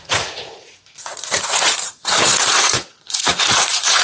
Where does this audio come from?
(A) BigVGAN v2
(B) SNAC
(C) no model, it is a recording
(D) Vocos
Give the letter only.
D